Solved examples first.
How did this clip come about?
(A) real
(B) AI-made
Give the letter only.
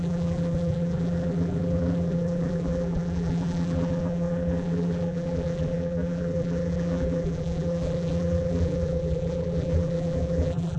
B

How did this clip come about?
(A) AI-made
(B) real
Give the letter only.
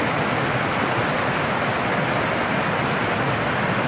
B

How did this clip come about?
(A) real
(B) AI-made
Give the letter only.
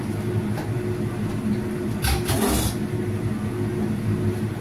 A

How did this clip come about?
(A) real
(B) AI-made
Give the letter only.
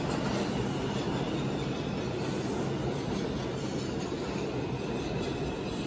A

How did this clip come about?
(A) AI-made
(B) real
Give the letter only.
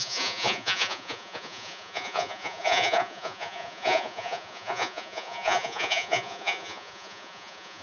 A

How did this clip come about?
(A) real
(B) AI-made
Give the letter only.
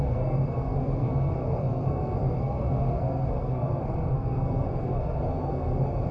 B